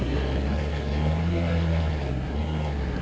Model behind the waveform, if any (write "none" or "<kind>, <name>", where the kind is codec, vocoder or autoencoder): codec, SNAC